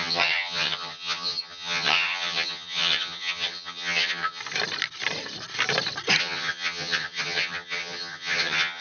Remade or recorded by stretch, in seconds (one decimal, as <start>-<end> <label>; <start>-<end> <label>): 0.0-4.4 remade; 4.4-6.2 recorded; 6.2-8.8 remade

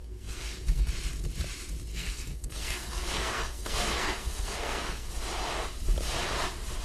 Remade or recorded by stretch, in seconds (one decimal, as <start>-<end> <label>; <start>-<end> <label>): 0.0-0.9 remade; 0.9-1.9 recorded; 1.9-5.1 remade; 5.1-6.8 recorded

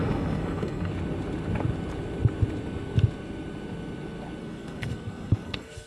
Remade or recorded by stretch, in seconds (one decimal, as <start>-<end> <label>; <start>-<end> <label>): 0.0-0.9 remade; 0.9-4.4 recorded; 4.4-5.9 remade

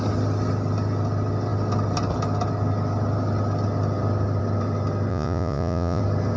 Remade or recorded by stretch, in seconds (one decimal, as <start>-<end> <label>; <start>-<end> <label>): 0.0-5.1 recorded; 5.1-6.0 remade; 6.0-6.4 recorded